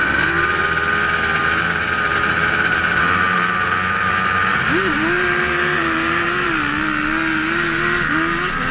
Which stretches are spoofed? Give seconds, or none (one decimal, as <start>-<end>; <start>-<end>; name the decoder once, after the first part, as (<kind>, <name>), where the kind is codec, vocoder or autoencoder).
1.4-3.0 (vocoder, BigVGAN v2); 4.5-6.5